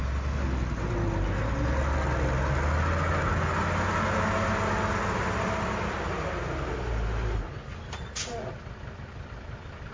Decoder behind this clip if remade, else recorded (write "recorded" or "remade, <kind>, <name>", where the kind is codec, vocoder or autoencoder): recorded